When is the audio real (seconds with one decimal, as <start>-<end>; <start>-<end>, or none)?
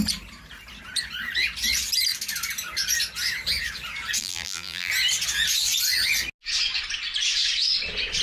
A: 0.0-4.2; 4.9-8.2